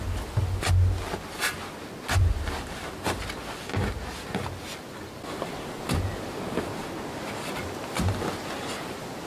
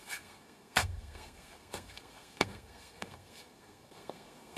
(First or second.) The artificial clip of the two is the second